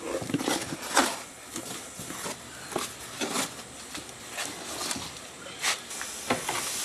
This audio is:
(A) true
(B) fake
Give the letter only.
A